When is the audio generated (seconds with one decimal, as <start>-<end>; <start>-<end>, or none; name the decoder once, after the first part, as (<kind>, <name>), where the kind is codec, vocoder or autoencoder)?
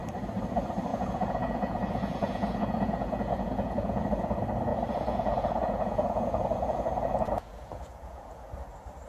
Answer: 0.9-4.0 (vocoder, Vocos); 4.7-8.6